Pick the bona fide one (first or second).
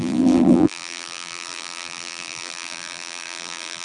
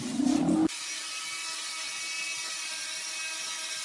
second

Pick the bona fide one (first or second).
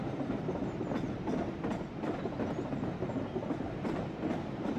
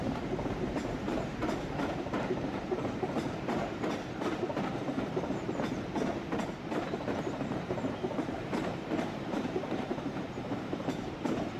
first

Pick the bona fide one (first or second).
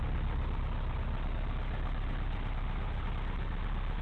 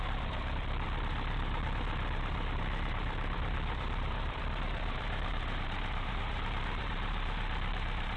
first